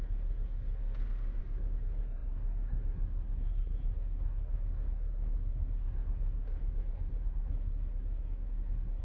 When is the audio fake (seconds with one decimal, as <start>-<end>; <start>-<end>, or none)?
0.0-0.8; 1.4-9.0